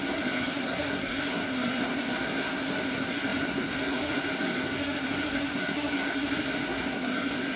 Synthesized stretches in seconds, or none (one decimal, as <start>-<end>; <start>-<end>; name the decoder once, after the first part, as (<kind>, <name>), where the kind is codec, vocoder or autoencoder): 0.0-7.6 (codec, SNAC)